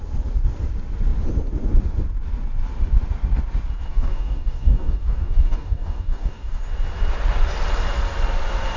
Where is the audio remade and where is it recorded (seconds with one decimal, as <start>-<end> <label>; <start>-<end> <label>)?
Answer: 0.0-3.9 recorded; 3.9-6.6 remade; 6.6-8.8 recorded